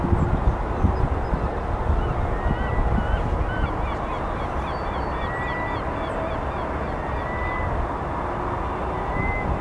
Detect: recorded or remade recorded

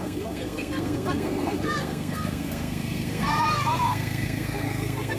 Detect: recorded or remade remade